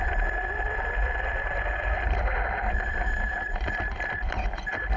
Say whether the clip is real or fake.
fake